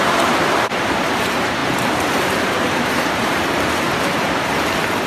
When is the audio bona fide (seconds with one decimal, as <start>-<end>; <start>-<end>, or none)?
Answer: none